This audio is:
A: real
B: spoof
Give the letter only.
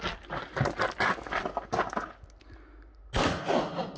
A